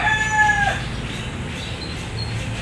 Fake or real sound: real